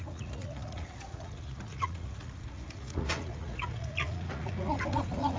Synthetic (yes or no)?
yes